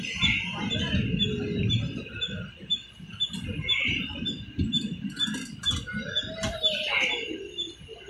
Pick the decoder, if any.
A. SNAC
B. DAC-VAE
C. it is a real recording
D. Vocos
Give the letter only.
C